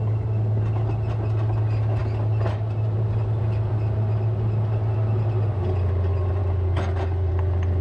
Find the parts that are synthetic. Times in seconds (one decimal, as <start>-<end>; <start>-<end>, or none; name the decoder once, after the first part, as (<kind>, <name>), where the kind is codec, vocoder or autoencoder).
none